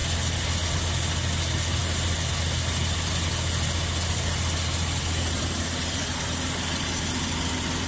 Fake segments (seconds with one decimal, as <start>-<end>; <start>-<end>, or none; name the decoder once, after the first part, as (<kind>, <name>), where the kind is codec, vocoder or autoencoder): none